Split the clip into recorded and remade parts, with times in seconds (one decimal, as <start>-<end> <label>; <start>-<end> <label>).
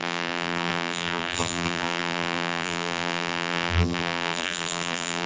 0.0-5.3 remade